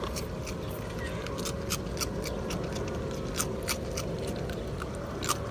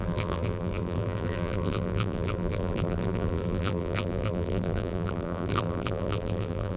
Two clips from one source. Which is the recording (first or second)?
first